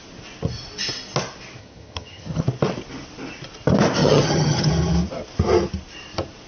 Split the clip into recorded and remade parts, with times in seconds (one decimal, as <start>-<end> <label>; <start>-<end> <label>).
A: 0.0-1.6 recorded; 1.6-2.4 remade; 2.4-4.0 recorded; 4.0-4.7 remade; 4.7-6.5 recorded